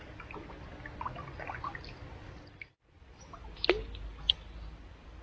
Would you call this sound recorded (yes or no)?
yes